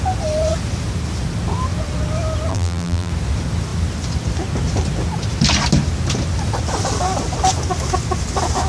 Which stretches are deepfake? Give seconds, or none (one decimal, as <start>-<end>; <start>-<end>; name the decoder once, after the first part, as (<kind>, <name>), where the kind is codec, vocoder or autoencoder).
2.5-3.1 (vocoder, BigVGAN v2)